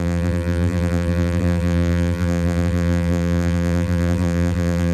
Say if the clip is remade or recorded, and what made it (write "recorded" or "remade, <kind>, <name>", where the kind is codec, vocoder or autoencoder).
remade, vocoder, BigVGAN v2